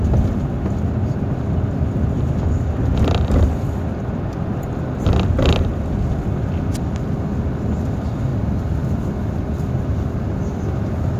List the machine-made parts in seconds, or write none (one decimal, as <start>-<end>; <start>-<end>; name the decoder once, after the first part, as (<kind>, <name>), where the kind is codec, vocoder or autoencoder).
8.3-8.9 (vocoder, BigVGAN v2)